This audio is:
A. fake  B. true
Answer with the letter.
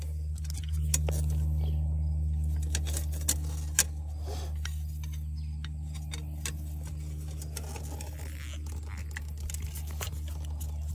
B